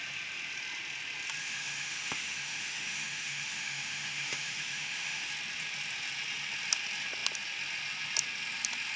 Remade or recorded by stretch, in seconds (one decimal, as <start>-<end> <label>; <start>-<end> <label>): 0.0-1.4 recorded; 1.4-5.3 remade; 5.3-9.0 recorded